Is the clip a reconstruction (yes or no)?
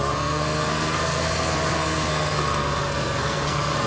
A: yes